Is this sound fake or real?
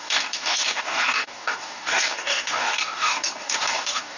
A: fake